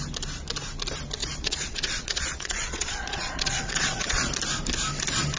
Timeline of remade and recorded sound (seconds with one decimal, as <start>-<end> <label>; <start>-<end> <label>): 0.0-1.2 recorded; 1.2-4.3 remade; 4.3-5.4 recorded